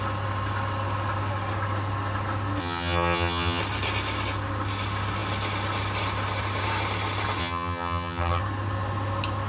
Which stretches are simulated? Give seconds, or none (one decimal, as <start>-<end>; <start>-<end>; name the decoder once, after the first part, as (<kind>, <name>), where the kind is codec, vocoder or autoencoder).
2.6-3.6 (vocoder, HiFi-GAN); 7.4-8.4